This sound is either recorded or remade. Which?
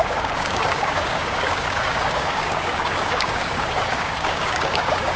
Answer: remade